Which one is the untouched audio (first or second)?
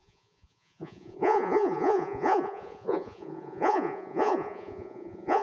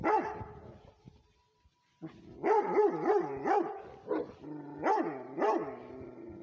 second